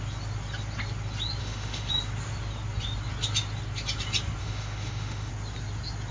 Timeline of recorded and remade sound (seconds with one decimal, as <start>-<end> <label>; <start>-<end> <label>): 0.0-1.4 recorded; 1.4-1.9 remade; 1.9-4.4 recorded; 4.4-5.3 remade; 5.3-6.1 recorded